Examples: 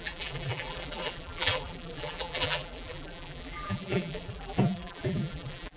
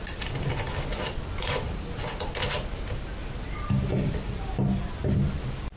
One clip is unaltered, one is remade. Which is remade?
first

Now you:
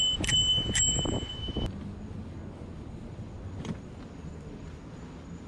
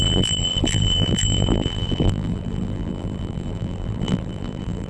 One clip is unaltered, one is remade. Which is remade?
second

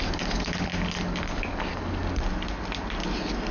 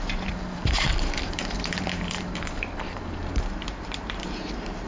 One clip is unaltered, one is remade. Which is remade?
second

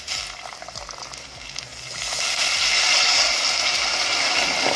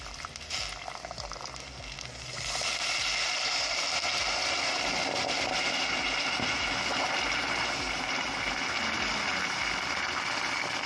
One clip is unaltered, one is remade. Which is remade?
second